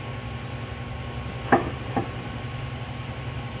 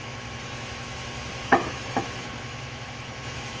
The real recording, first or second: first